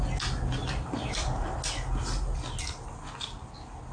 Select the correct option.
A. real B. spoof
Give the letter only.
A